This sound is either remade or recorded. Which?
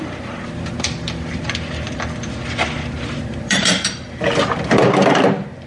remade